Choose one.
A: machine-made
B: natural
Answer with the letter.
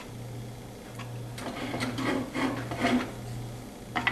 B